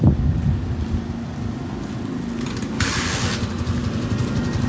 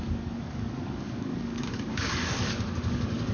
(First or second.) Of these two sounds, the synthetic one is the second